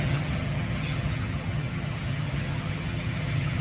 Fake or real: fake